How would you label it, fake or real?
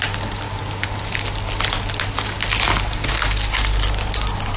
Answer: real